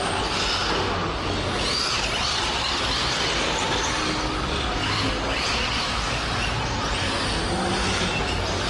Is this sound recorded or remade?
recorded